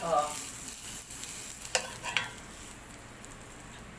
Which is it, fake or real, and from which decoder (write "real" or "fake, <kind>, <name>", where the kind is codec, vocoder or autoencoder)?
real